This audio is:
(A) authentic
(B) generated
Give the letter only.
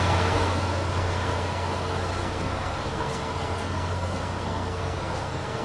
B